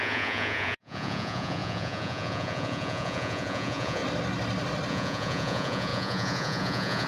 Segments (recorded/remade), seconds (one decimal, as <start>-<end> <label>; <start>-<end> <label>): 0.0-4.0 remade; 4.0-4.9 recorded; 4.9-7.1 remade